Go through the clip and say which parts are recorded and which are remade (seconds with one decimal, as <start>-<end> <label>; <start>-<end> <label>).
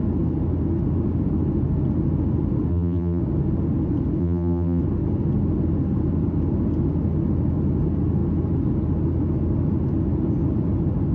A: 0.0-2.7 recorded; 2.7-3.2 remade; 3.2-4.2 recorded; 4.2-4.8 remade; 4.8-11.1 recorded